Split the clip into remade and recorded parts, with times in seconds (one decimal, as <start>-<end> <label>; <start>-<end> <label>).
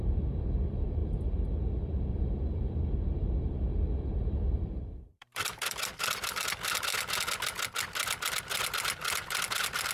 0.0-6.9 remade; 6.9-8.4 recorded; 8.4-9.9 remade